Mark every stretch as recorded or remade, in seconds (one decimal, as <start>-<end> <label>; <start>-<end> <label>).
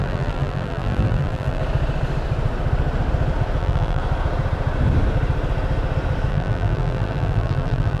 0.0-1.6 remade; 1.6-3.6 recorded; 3.6-4.0 remade; 4.0-6.3 recorded; 6.3-8.0 remade